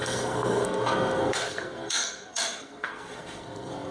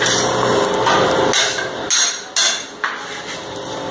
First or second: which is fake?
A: first